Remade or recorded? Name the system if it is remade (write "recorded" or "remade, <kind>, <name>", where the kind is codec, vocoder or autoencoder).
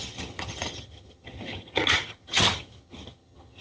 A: remade, vocoder, HiFi-GAN